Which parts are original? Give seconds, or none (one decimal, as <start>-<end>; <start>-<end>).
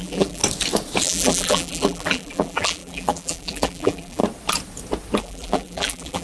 0.4-1.0; 4.2-5.2